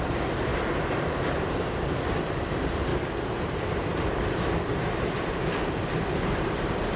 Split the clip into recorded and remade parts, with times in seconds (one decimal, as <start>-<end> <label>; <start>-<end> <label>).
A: 0.0-0.5 remade; 0.5-1.3 recorded; 1.3-2.9 remade; 2.9-3.4 recorded; 3.4-4.7 remade; 4.7-5.3 recorded; 5.3-7.0 remade